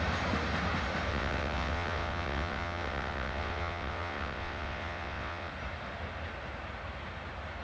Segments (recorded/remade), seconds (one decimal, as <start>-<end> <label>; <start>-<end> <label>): 0.0-1.1 recorded; 1.1-5.5 remade; 5.5-7.6 recorded